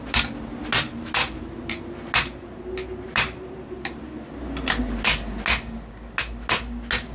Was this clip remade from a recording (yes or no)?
no